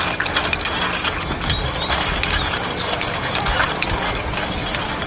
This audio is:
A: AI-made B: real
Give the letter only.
B